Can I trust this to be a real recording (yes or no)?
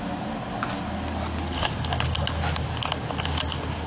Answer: yes